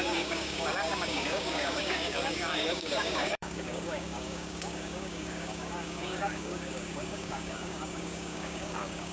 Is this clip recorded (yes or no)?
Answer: no